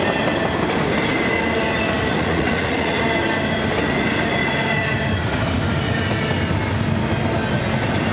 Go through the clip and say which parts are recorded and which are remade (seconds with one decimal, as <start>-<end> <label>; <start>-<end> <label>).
0.0-2.1 recorded; 2.1-3.0 remade; 3.0-8.1 recorded